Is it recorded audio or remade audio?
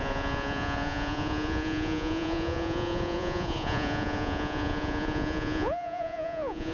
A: remade